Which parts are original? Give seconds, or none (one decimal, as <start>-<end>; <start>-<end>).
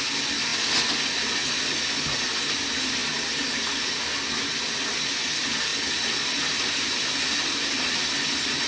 0.0-8.7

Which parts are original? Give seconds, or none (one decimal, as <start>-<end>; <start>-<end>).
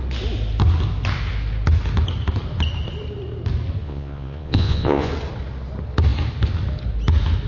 0.0-3.8; 5.1-7.5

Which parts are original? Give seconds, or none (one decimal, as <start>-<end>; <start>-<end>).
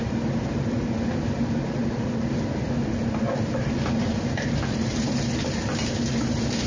0.0-6.7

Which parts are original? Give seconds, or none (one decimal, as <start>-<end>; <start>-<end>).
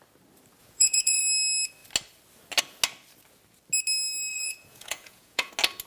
0.0-0.6; 1.2-4.3; 5.5-5.9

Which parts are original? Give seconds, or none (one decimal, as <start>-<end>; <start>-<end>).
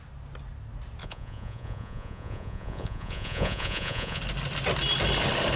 0.0-1.0; 4.2-5.6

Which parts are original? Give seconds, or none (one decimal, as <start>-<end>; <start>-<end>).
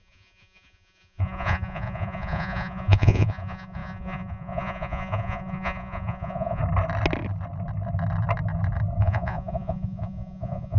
6.6-9.0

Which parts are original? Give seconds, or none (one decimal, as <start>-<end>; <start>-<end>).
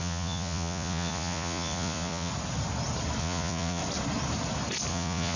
2.3-3.2; 3.8-4.9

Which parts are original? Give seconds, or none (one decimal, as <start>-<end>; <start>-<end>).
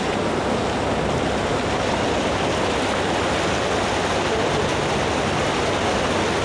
0.0-6.4